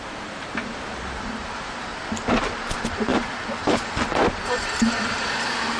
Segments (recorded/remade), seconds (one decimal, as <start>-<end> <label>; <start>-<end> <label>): 0.0-1.9 remade; 1.9-2.5 recorded; 2.5-5.8 remade